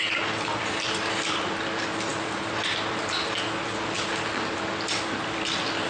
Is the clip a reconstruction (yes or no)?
no